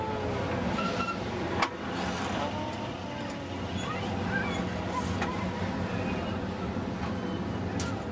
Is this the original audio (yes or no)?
yes